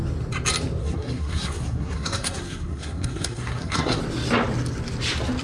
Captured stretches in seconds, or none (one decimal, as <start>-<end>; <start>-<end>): 0.0-0.8; 4.0-5.4